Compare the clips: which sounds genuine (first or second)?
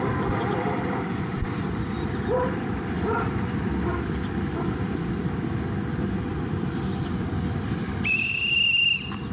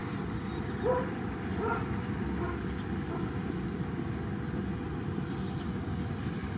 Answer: second